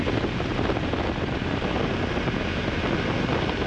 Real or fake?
real